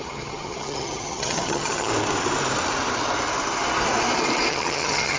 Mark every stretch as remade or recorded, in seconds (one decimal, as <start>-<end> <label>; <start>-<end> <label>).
0.0-1.9 remade; 1.9-4.5 recorded; 4.5-5.2 remade

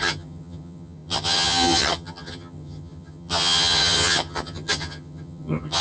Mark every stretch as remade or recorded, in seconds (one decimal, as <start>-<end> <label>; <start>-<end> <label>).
0.0-5.8 remade

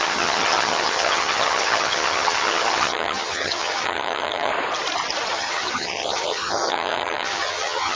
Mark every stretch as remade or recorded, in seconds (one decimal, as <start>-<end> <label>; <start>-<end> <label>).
0.0-4.5 remade; 4.5-5.3 recorded; 5.3-8.0 remade